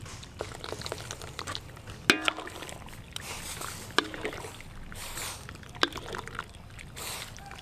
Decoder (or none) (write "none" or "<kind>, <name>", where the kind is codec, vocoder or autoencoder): none